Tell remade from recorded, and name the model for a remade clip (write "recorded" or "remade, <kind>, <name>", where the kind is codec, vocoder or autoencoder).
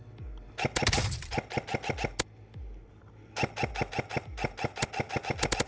recorded